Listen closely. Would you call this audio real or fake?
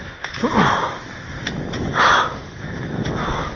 fake